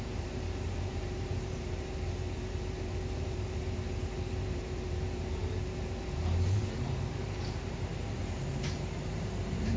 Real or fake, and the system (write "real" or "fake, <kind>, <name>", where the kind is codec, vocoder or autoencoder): fake, vocoder, BigVGAN v2